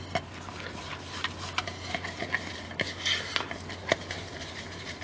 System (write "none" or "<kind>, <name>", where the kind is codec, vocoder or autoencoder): none